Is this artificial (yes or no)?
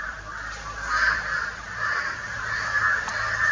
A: yes